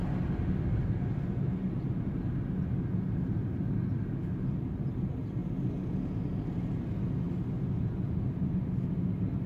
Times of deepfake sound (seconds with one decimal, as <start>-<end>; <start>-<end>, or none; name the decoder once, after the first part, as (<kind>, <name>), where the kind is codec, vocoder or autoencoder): none